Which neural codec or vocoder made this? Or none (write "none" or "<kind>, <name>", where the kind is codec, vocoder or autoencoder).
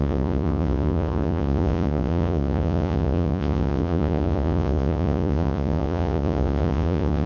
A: vocoder, Vocos